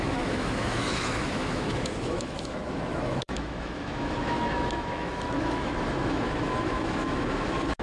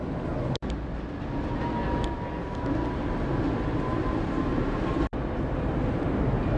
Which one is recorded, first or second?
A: second